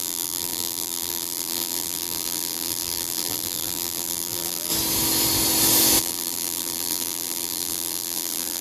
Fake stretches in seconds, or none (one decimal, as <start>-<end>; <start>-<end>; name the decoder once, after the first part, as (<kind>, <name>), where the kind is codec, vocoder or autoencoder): 0.0-4.7 (vocoder, BigVGAN v2); 6.0-8.6